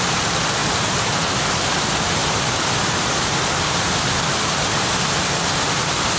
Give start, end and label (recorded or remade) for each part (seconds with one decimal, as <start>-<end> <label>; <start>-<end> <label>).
0.0-6.2 recorded

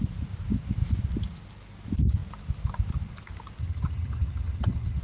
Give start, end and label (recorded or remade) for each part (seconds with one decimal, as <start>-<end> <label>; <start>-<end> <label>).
0.0-3.6 recorded; 3.6-5.0 remade